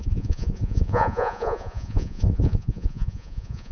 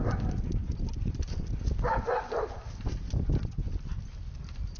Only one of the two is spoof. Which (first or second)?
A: first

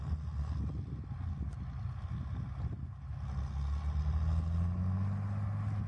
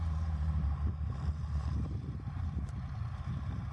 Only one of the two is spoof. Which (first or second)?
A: second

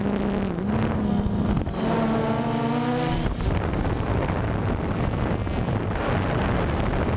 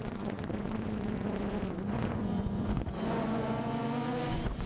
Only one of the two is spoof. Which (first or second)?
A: second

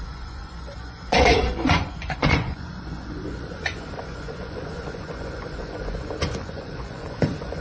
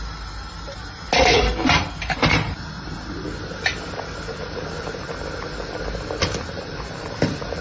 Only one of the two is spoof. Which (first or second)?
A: first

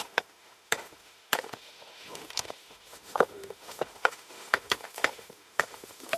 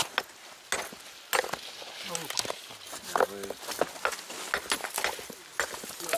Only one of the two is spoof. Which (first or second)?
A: first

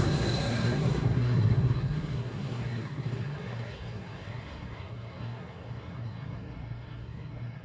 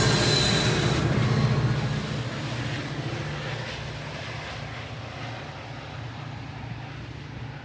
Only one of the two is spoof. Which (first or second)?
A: first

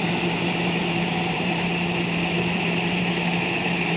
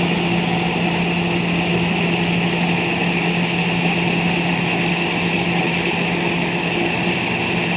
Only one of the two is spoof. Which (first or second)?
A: first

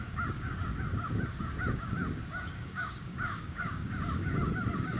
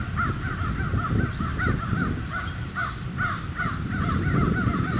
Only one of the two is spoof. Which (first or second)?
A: first